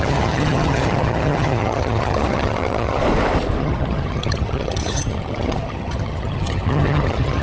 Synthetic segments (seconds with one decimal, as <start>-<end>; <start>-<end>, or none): 0.0-3.0; 3.6-7.4

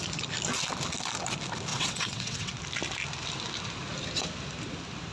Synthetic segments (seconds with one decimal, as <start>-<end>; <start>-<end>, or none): 1.7-2.5

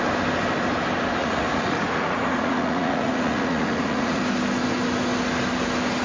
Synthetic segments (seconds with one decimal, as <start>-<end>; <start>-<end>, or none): 1.2-4.2

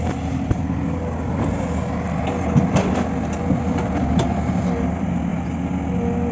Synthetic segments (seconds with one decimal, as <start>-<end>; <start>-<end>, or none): none

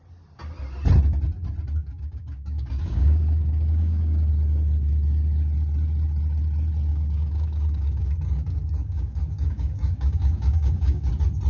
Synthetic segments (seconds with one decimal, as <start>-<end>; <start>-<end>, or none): 1.8-4.3; 6.9-11.1

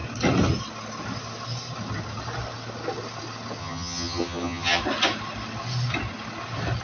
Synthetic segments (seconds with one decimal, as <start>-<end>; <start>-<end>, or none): 3.6-4.8

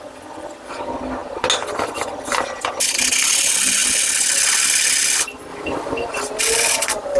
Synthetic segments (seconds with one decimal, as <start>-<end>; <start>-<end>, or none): 0.0-1.2; 1.9-3.8; 4.6-5.5; 6.4-7.2